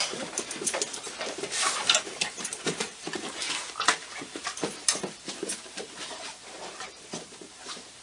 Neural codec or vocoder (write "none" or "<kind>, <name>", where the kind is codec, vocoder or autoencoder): vocoder, BigVGAN v2